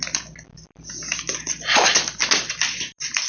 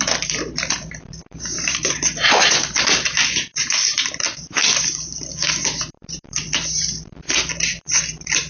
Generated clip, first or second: second